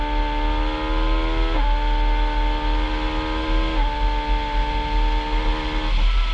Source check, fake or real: real